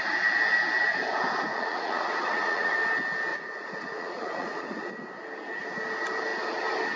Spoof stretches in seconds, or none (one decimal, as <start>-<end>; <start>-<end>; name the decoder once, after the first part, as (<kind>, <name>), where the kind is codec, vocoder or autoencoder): 1.5-2.7 (vocoder, Vocos); 3.3-4.9